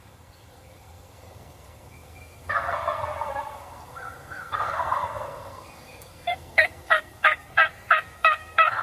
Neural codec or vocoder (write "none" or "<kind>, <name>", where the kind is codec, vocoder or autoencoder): codec, SNAC